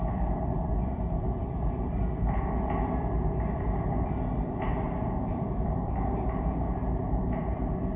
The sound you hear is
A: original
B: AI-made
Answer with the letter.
B